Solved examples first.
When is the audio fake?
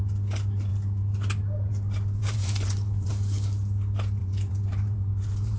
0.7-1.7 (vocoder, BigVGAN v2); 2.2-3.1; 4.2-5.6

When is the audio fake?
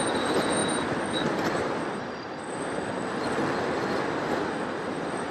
none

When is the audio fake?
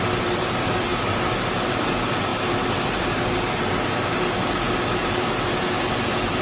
none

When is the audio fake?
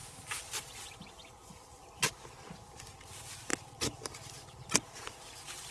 1.2-2.1 (vocoder, BigVGAN v2)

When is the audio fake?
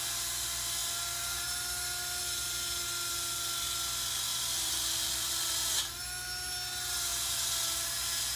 4.3-5.5 (vocoder, BigVGAN v2)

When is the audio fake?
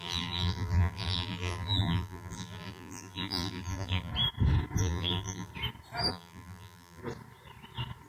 0.0-4.1 (vocoder, BigVGAN v2); 4.8-5.5; 6.1-7.0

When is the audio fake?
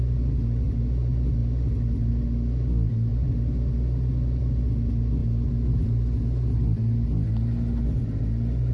none